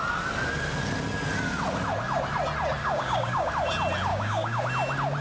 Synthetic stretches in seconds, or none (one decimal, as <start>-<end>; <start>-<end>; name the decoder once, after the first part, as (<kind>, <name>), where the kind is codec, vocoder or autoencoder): 2.8-3.5 (codec, DAC); 4.1-4.6

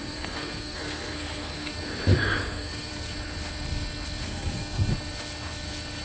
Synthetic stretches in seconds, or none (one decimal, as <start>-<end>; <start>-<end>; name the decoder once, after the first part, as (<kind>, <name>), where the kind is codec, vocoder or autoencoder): 0.0-1.7 (codec, SNAC); 2.4-2.9; 4.2-4.9

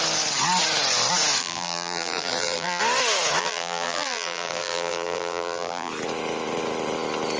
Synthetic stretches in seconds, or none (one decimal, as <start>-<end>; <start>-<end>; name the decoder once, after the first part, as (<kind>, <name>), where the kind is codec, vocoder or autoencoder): 1.4-2.8 (vocoder, BigVGAN v2); 3.4-5.9

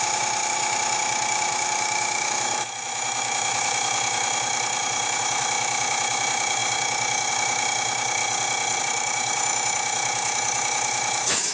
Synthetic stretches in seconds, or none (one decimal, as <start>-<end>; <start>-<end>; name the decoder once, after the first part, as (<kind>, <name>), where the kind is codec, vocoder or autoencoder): 0.0-8.2 (autoencoder, DAC-VAE); 8.8-11.5

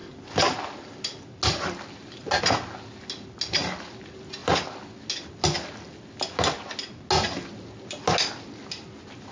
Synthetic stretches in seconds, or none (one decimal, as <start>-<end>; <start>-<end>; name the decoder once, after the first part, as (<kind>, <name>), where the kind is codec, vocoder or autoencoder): none

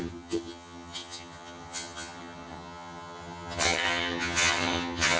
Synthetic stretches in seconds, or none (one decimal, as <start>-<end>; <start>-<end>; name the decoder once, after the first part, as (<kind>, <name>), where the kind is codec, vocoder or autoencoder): 0.0-5.2 (vocoder, HiFi-GAN)

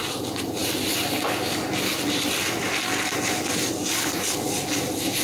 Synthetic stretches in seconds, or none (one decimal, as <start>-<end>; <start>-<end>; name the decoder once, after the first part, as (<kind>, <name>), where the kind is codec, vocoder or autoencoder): none

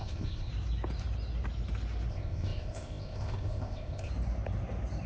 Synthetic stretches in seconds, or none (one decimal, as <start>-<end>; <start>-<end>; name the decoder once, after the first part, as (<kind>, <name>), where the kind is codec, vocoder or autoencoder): 0.0-0.5 (codec, ZipCodec); 2.1-4.1